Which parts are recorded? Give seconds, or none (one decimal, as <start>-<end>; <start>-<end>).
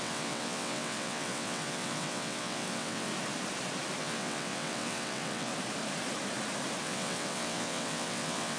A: 3.1-4.0; 5.5-6.8